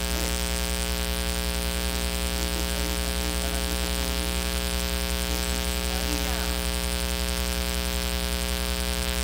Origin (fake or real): real